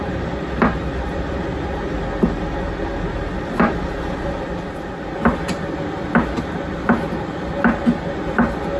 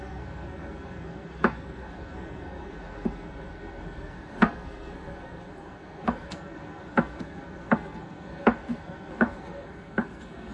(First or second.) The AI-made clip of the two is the second